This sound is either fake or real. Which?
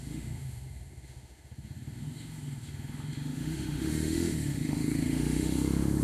fake